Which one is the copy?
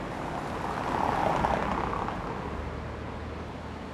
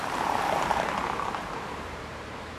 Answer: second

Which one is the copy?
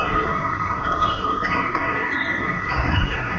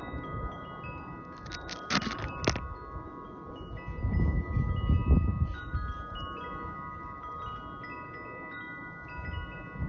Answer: first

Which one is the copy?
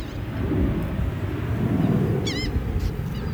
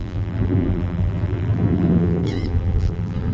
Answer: second